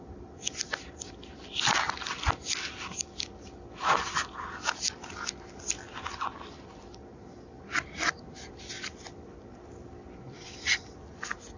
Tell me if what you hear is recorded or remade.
recorded